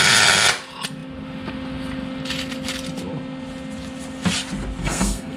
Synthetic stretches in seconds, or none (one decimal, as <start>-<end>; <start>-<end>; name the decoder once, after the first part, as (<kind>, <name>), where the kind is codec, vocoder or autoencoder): 4.8-5.4 (codec, SNAC)

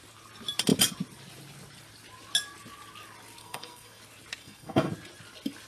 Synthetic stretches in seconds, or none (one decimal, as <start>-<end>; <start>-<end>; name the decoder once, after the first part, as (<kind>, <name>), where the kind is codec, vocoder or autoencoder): 3.4-4.0 (codec, SNAC); 4.4-4.9

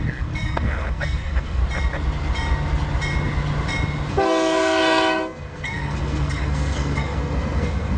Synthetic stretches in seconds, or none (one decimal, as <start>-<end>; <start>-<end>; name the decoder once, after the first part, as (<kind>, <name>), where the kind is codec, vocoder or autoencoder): 0.0-1.6 (codec, SNAC); 4.1-8.0

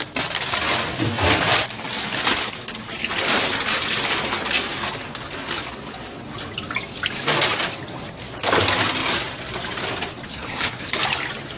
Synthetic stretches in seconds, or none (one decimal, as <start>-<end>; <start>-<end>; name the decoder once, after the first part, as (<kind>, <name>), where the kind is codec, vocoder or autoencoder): 10.3-10.9 (codec, SNAC)

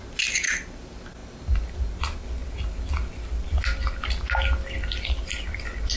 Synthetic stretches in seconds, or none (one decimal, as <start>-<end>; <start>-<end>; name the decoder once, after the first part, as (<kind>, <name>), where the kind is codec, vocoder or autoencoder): none

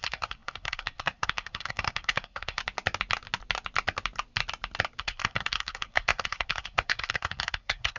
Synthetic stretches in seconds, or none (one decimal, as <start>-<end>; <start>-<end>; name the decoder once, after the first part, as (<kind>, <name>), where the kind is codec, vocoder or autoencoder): 0.0-2.6 (codec, SNAC); 5.0-8.0

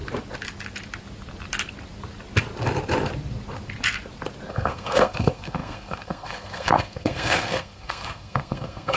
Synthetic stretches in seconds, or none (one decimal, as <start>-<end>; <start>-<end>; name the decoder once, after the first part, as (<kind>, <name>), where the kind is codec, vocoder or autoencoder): 4.5-9.0 (codec, SNAC)

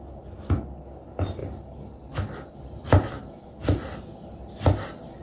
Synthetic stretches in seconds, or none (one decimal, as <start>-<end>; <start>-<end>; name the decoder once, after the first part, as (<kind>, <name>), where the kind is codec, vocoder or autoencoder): none